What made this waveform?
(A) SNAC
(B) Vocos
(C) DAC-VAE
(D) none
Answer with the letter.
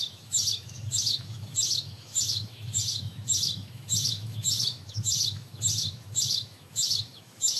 C